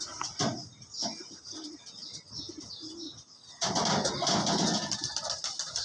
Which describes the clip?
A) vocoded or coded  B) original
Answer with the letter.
B